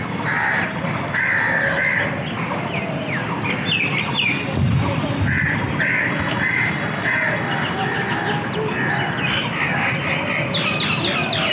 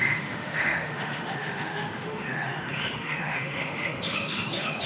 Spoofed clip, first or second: second